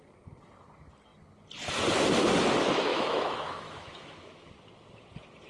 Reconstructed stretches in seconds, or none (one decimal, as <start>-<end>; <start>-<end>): 2.9-4.5